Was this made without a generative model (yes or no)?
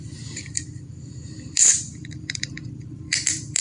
no